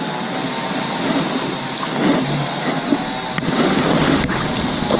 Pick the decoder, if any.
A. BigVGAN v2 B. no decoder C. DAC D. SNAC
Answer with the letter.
B